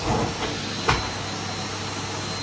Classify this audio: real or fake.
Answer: real